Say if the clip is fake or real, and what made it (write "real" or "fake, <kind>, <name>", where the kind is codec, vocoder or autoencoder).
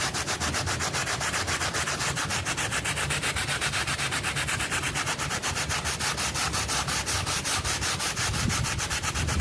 fake, vocoder, BigVGAN v2